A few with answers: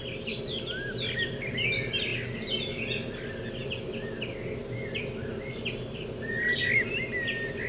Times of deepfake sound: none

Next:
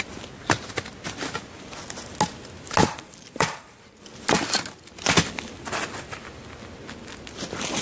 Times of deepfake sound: 2.8-4.0 (vocoder, BigVGAN v2)

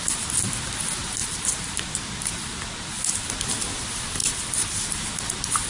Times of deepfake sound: 4.2-4.9 (vocoder, BigVGAN v2)

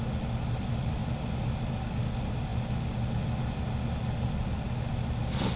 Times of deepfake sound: 1.0-1.7 (vocoder, BigVGAN v2)